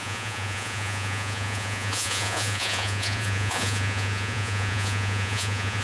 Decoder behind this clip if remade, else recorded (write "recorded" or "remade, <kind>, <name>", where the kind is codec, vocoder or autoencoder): remade, vocoder, Vocos